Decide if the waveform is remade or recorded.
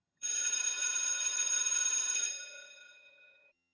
remade